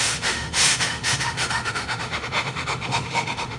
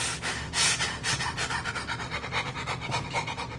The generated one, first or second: first